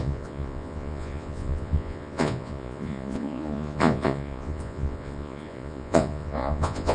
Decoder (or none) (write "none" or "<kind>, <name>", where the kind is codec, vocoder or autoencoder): vocoder, Vocos